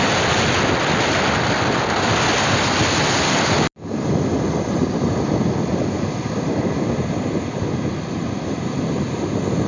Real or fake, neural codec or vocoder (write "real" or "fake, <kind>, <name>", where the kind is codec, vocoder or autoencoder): real